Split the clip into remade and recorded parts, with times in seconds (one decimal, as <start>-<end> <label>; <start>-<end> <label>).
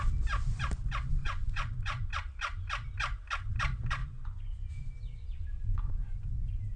0.0-1.2 recorded; 1.2-2.1 remade; 2.1-4.0 recorded; 4.0-4.8 remade; 4.8-5.7 recorded; 5.7-6.3 remade; 6.3-6.8 recorded